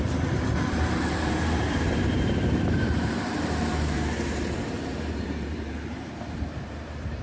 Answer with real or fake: fake